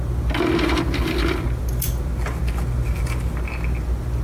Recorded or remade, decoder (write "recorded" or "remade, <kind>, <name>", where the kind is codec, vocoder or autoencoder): recorded